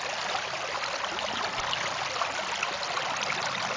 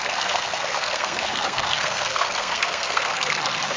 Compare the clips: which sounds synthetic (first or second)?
second